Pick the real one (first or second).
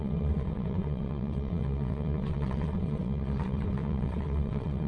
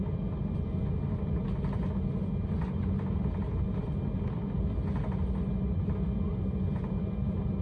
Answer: second